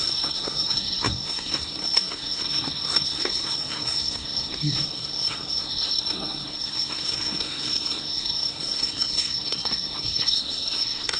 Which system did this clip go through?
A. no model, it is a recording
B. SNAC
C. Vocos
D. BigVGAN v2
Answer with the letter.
B